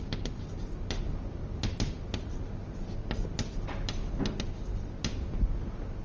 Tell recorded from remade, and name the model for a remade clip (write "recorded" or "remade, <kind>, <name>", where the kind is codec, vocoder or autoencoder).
recorded